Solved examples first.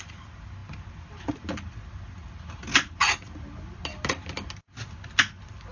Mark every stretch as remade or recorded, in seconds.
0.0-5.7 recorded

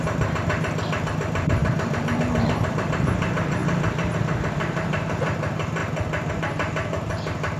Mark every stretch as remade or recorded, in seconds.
0.0-3.6 remade; 3.6-4.2 recorded; 4.2-5.8 remade; 5.8-6.3 recorded; 6.3-7.6 remade

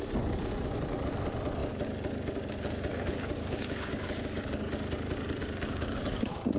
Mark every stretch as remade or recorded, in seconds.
0.0-2.9 recorded; 2.9-4.7 remade; 4.7-5.4 recorded; 5.4-6.6 remade

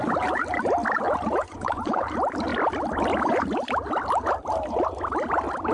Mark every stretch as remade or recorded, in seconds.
0.0-1.4 recorded; 1.4-2.0 remade; 2.0-5.7 recorded

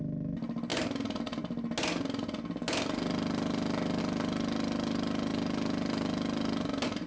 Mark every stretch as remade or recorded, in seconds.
0.0-7.1 recorded

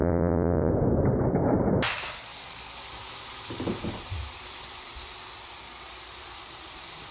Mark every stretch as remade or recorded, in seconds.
0.0-0.7 remade; 0.7-7.1 recorded

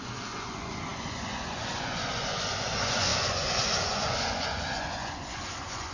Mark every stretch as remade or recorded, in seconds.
0.0-5.9 remade